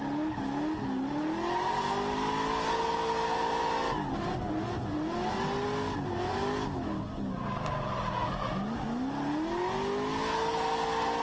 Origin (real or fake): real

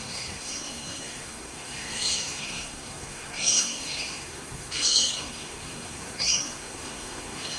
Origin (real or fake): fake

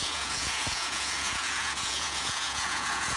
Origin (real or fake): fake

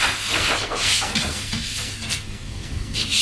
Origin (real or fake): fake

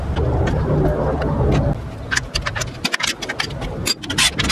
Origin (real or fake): real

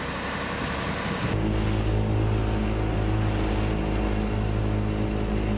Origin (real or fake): real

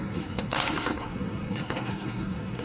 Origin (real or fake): fake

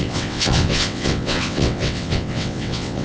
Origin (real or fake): fake